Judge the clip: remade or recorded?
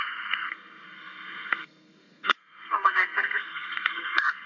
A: remade